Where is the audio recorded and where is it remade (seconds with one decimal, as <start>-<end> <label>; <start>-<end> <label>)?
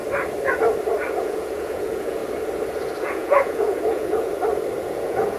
0.0-1.2 recorded; 1.2-2.2 remade; 2.2-3.0 recorded; 3.0-4.3 remade; 4.3-4.8 recorded; 4.8-5.4 remade